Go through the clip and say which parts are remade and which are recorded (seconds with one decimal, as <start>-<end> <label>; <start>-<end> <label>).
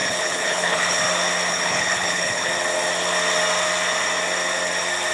0.0-1.0 remade; 1.0-1.5 recorded; 1.5-2.5 remade; 2.5-5.1 recorded